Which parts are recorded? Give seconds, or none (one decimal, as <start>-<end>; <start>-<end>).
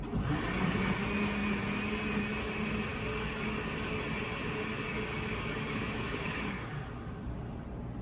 0.0-2.9; 4.0-4.9; 6.7-8.0